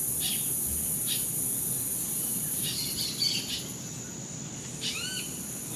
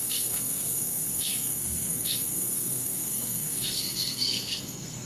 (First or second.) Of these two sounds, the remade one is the second